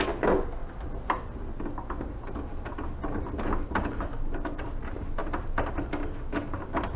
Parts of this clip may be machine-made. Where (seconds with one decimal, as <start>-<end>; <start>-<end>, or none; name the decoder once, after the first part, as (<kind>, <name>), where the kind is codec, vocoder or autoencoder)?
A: none